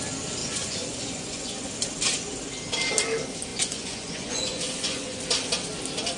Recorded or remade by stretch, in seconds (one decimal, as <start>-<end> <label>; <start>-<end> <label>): 0.0-0.4 recorded; 0.4-1.7 remade; 1.7-3.5 recorded; 3.5-5.2 remade; 5.2-6.2 recorded